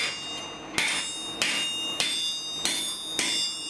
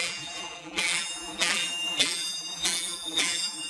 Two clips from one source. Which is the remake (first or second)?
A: second